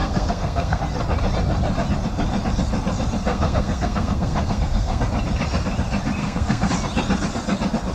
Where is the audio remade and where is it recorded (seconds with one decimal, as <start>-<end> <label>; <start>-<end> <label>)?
0.0-0.8 remade; 0.8-3.3 recorded; 3.3-5.0 remade; 5.0-6.2 recorded; 6.2-6.7 remade; 6.7-7.9 recorded